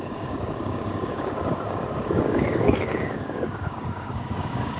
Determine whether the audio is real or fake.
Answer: fake